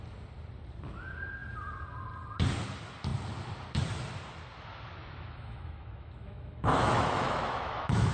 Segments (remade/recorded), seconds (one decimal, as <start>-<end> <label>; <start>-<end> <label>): 0.0-5.0 recorded; 5.0-8.1 remade